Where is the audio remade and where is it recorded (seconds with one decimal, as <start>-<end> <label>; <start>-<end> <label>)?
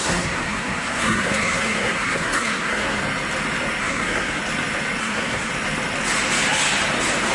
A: 0.0-3.0 remade; 3.0-3.8 recorded; 3.8-4.4 remade; 4.4-5.0 recorded; 5.0-5.5 remade; 5.5-7.3 recorded